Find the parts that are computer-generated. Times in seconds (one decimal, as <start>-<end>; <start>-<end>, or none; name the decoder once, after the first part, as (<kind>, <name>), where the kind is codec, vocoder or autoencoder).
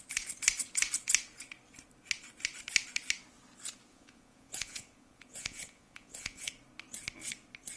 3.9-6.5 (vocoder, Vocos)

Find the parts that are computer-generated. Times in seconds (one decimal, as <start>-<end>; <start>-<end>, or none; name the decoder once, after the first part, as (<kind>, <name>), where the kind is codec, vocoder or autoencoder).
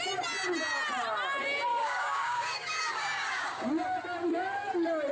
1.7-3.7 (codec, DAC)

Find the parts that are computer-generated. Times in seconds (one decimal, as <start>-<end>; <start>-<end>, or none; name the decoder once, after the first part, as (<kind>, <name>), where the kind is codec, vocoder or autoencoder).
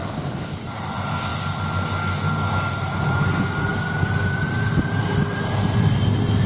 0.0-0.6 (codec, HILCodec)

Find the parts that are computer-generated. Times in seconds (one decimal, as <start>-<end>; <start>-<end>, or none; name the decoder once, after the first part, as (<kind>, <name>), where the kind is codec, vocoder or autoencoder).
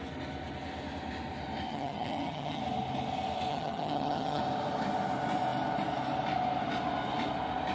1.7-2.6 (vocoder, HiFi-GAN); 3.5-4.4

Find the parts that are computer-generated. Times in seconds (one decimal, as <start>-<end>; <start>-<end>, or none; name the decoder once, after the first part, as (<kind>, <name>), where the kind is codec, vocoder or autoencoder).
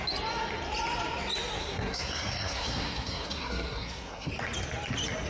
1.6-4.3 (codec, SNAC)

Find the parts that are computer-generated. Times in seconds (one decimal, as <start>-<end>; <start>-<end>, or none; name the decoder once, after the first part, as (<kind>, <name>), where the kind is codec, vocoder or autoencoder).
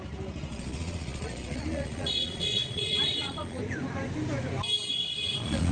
0.5-3.6 (vocoder, Vocos); 4.9-5.7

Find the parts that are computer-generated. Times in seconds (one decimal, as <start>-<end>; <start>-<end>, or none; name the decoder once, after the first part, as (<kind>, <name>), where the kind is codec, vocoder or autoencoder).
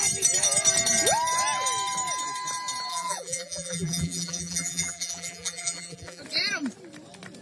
2.9-6.2 (vocoder, BigVGAN v2)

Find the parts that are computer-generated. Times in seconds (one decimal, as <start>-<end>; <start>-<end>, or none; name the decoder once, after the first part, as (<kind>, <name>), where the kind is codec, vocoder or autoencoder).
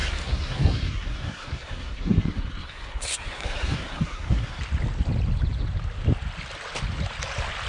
0.0-4.6 (codec, SNAC)